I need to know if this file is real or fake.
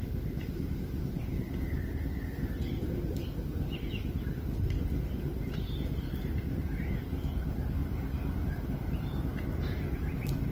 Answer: real